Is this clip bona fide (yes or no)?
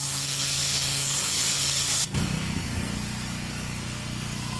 no